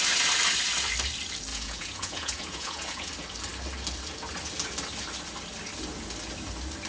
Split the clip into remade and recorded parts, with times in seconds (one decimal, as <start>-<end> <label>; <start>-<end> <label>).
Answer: 0.0-1.5 recorded; 1.5-3.1 remade; 3.1-6.9 recorded

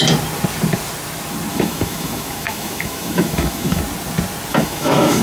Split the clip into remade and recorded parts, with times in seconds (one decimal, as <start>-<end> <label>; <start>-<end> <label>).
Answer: 0.0-1.5 recorded; 1.5-3.8 remade; 3.8-4.5 recorded; 4.5-5.2 remade

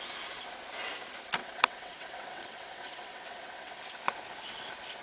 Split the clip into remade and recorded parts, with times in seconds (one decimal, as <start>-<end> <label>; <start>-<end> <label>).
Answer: 0.0-1.4 recorded; 1.4-3.8 remade; 3.8-5.0 recorded

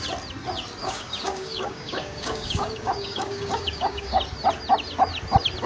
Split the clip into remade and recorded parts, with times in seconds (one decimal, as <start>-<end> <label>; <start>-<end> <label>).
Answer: 0.0-0.8 recorded; 0.8-4.2 remade; 4.2-5.7 recorded

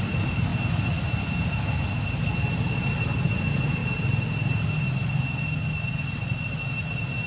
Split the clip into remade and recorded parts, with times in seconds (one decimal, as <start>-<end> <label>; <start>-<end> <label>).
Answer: 0.0-7.3 recorded

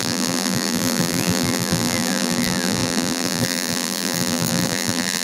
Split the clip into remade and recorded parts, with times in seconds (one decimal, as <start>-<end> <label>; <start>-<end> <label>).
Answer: 0.0-5.2 remade

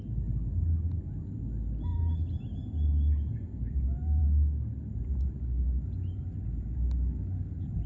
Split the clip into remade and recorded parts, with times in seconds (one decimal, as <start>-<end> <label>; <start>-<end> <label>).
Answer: 0.0-7.9 recorded

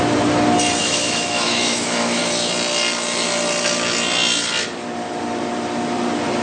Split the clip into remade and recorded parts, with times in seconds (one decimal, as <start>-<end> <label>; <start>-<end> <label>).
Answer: 0.0-0.8 recorded; 0.8-2.2 remade; 2.2-6.4 recorded